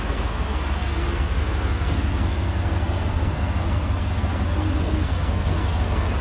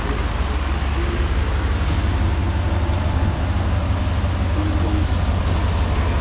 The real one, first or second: second